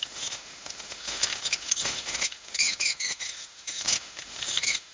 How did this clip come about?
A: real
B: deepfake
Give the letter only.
B